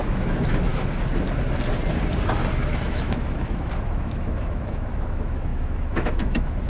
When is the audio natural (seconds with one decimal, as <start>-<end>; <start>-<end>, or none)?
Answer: 0.7-2.6

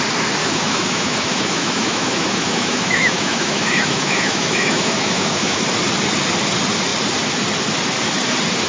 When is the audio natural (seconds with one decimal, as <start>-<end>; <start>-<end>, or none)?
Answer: 0.0-0.4; 5.6-8.7